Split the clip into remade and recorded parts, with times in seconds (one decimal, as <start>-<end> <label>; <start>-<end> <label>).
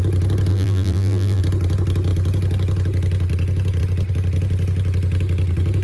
0.0-0.5 recorded; 0.5-1.4 remade; 1.4-5.8 recorded